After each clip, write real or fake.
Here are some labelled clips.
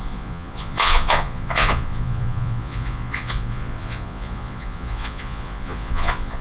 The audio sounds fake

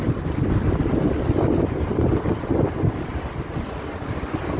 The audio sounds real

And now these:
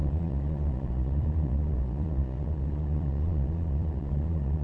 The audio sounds fake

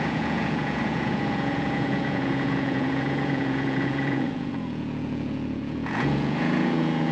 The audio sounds fake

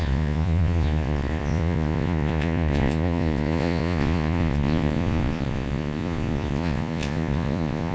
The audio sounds fake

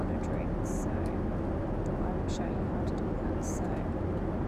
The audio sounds real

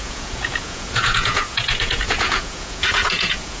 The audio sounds fake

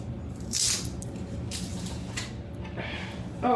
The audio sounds real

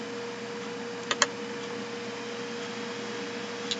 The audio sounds real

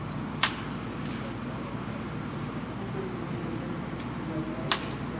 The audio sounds real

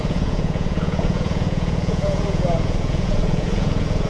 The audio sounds fake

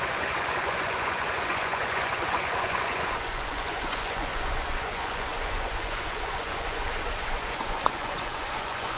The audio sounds fake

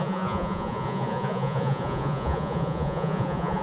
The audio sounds fake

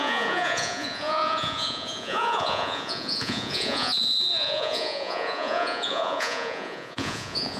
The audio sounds fake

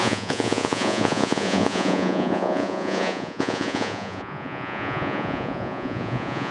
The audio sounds fake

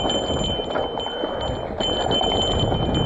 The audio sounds real